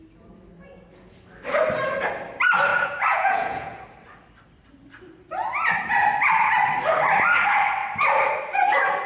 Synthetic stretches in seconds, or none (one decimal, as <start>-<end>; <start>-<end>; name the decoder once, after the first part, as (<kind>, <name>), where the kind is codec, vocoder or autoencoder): 2.7-3.8 (vocoder, Vocos)